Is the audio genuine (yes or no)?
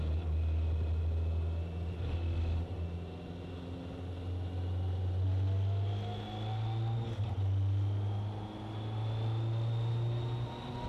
yes